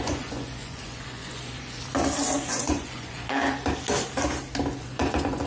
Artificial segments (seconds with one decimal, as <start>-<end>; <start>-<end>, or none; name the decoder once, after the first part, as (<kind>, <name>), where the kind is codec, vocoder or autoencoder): 0.0-1.8 (vocoder, Vocos); 2.4-3.4; 4.8-5.5